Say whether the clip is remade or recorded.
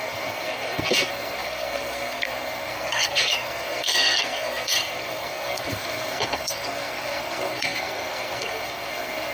remade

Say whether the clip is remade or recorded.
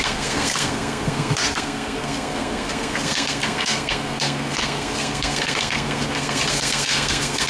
remade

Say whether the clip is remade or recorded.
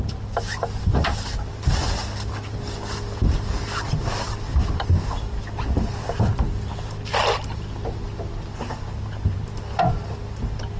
recorded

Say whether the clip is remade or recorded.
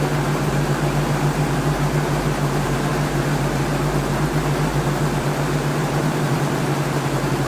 remade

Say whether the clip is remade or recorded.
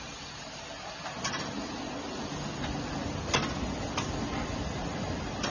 recorded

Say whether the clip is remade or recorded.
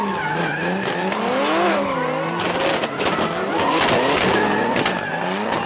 recorded